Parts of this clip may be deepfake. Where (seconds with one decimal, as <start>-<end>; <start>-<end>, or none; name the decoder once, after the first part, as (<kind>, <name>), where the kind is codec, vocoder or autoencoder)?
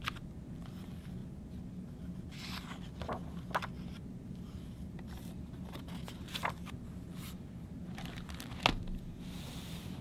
none